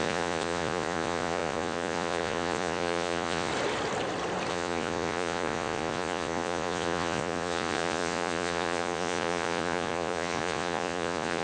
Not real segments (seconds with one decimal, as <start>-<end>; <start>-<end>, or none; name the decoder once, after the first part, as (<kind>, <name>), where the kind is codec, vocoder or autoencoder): 0.0-3.5 (vocoder, Vocos); 4.5-11.4